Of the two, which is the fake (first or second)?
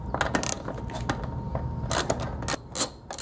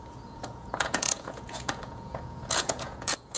second